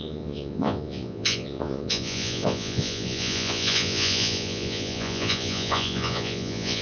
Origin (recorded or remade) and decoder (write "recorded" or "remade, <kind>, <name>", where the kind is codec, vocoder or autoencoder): remade, vocoder, Vocos